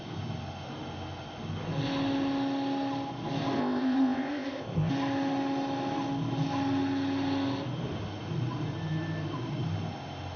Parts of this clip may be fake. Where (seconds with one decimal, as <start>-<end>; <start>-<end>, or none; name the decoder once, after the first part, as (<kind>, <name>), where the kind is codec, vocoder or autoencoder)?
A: 3.6-4.9 (codec, ZipCodec)